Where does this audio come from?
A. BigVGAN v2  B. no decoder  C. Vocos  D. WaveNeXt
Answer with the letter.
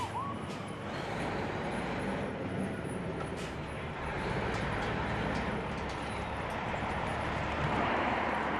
A